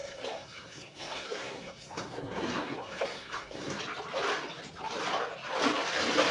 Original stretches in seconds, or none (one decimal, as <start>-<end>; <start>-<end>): 3.8-6.3